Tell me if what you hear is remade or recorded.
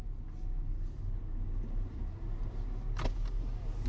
recorded